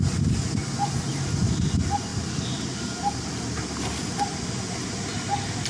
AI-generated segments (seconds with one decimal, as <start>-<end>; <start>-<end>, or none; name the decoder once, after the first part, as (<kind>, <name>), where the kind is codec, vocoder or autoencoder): none